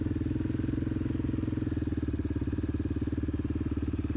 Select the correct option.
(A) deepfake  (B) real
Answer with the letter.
B